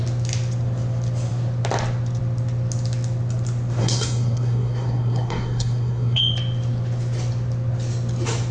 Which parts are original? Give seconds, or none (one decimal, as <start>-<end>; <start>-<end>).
0.0-3.8; 6.2-8.5